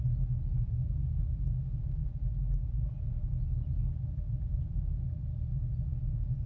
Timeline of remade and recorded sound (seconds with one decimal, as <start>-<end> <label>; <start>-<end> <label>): 0.0-6.5 recorded